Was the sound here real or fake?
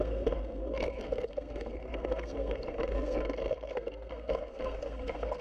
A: fake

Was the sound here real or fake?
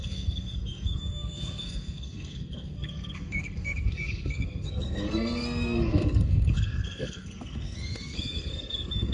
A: fake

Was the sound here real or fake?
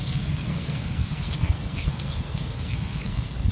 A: fake